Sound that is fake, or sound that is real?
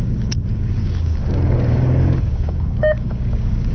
fake